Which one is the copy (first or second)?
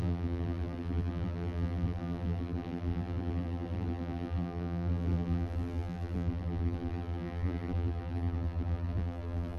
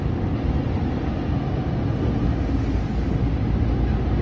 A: first